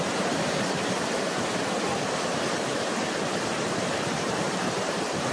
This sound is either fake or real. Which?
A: fake